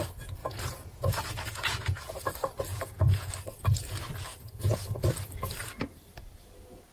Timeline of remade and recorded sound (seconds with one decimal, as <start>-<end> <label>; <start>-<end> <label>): 0.0-0.4 recorded; 0.4-2.3 remade; 2.3-2.7 recorded; 2.7-3.3 remade; 3.3-4.3 recorded; 4.3-5.0 remade; 5.0-6.9 recorded